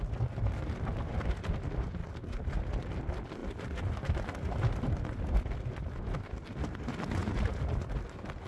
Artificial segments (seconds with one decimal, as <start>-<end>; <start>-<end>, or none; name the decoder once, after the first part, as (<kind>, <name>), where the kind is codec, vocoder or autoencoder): none